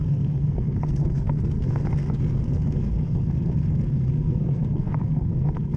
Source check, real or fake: fake